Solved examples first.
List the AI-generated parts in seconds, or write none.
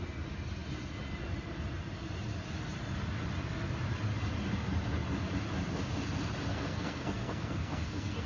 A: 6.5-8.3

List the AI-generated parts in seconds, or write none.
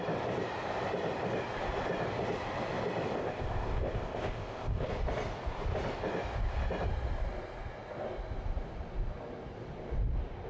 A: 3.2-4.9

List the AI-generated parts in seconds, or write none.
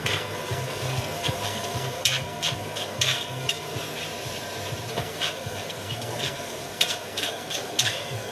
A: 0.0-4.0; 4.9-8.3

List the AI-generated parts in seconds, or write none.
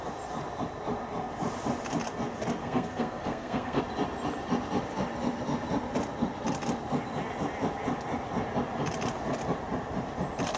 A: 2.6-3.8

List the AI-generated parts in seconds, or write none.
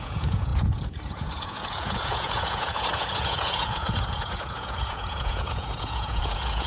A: 0.0-6.7